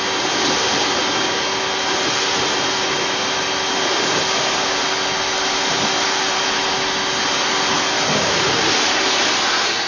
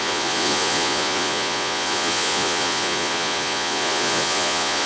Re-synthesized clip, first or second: second